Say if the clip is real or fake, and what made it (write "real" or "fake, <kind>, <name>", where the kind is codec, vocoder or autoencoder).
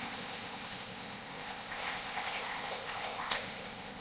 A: fake, codec, ZipCodec